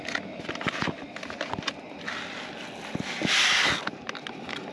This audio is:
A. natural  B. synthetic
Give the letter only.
A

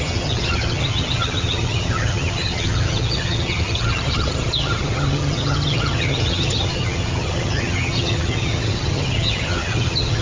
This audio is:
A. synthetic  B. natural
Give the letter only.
A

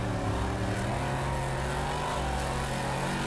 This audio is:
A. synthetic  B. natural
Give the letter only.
B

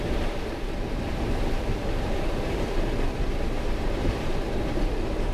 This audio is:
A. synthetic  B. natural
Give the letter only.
A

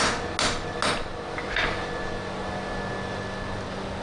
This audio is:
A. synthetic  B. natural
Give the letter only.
B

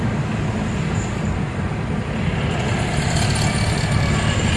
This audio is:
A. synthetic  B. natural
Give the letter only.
B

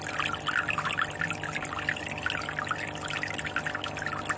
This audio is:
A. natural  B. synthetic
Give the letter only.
A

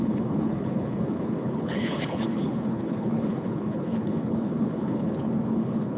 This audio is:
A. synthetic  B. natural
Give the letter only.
A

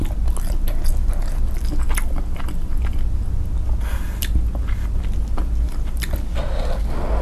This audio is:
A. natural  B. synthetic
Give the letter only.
A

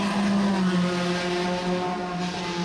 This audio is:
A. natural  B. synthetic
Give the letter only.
A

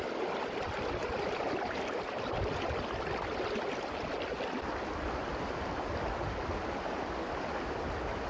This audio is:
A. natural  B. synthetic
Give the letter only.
A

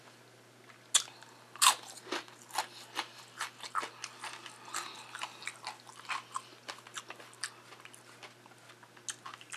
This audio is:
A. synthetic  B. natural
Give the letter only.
B